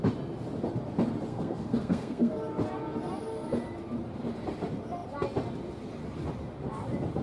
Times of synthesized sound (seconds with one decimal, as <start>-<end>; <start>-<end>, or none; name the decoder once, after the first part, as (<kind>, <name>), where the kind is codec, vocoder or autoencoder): 1.3-2.3 (codec, SNAC)